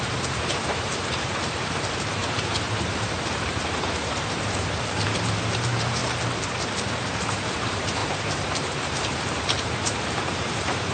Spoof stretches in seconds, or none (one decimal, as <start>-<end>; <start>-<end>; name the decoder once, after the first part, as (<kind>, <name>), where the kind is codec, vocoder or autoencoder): 0.0-6.0 (vocoder, BigVGAN v2); 6.7-10.9